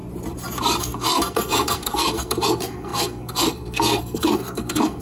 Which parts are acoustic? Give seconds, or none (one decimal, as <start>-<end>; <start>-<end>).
0.0-0.8

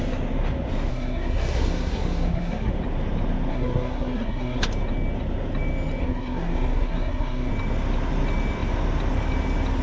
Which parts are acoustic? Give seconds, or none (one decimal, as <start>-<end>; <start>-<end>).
0.0-0.9; 2.7-3.5; 4.6-6.0; 7.5-9.8

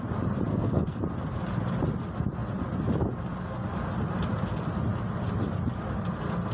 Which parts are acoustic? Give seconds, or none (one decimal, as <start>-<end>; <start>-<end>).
0.0-0.5; 1.0-6.5

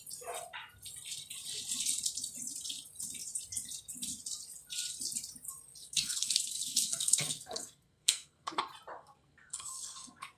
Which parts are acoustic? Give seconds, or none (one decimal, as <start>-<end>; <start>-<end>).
0.0-5.8; 8.6-9.0

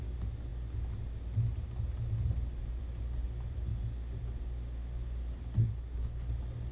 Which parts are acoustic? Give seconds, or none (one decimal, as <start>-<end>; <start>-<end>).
0.0-5.6; 6.3-6.7

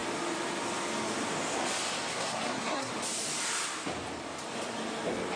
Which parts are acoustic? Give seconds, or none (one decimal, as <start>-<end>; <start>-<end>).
0.0-2.1; 2.9-5.4

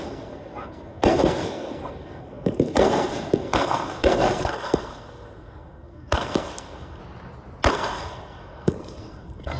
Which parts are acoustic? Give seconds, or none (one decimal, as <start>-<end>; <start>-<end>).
7.0-7.7

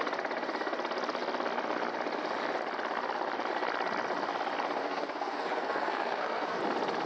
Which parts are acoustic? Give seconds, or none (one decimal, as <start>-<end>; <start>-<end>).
0.0-4.8; 6.6-7.1